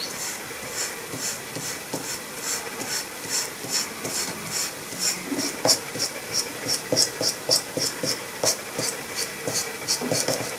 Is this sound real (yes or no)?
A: yes